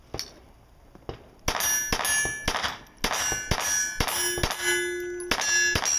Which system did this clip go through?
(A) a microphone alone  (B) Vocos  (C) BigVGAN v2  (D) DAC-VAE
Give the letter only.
A